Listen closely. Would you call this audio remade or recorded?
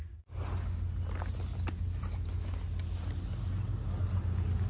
recorded